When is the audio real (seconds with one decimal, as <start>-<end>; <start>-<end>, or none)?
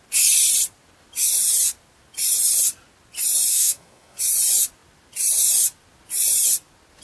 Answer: 0.0-3.5; 4.2-7.0